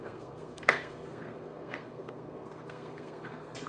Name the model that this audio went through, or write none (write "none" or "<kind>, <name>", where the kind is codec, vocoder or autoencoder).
codec, SNAC